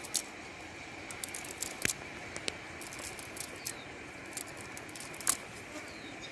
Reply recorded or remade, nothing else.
recorded